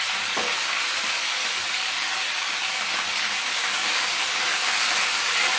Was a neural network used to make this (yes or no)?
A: yes